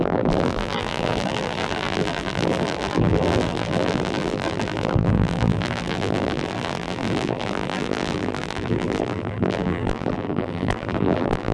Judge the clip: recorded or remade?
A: remade